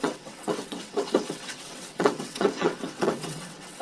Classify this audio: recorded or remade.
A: remade